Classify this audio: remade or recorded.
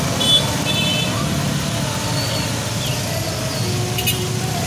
recorded